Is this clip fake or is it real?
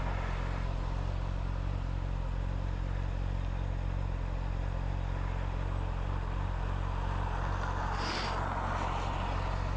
real